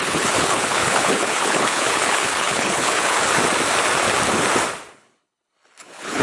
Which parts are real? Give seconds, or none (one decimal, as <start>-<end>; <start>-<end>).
3.2-4.9